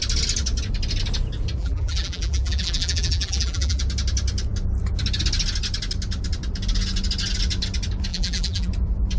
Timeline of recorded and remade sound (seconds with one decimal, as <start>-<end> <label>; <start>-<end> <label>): 0.0-1.6 recorded; 1.6-3.8 remade; 3.8-8.1 recorded; 8.1-8.7 remade; 8.7-9.2 recorded